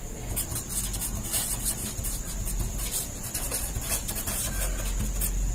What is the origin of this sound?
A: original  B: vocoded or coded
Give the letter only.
A